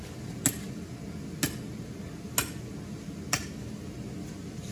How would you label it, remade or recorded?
recorded